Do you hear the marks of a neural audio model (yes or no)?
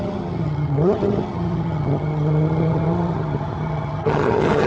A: yes